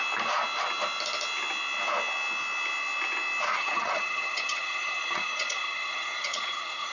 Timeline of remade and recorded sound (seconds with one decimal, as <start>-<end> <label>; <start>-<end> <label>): 0.0-3.5 recorded; 3.5-6.9 remade